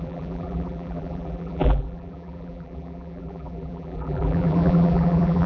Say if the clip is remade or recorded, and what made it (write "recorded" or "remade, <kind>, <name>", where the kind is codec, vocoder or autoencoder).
remade, vocoder, BigVGAN v2